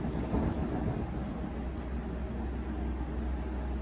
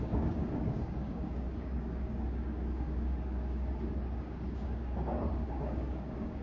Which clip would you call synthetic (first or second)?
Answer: second